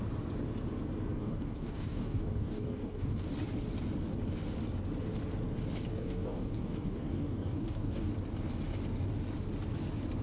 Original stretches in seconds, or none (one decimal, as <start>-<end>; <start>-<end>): 0.0-1.2; 3.3-5.9; 8.1-10.2